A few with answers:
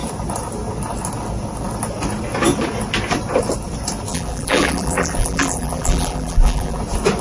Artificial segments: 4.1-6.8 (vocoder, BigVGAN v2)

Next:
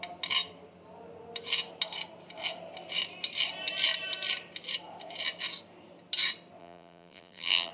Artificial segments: 6.6-7.7 (vocoder, BigVGAN v2)

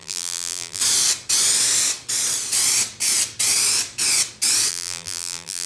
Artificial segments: 0.0-0.8 (vocoder, BigVGAN v2); 4.7-5.7

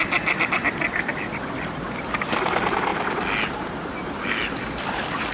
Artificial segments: 0.0-1.1 (vocoder, BigVGAN v2); 2.4-2.9; 4.1-5.3

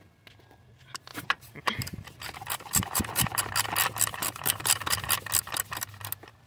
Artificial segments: 1.1-3.4 (vocoder, BigVGAN v2); 4.2-5.1

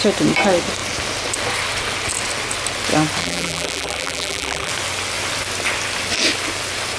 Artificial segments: 3.2-4.7 (vocoder, BigVGAN v2)

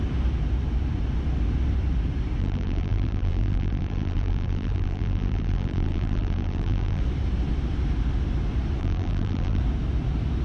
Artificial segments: 2.4-7.0 (vocoder, BigVGAN v2); 8.8-9.6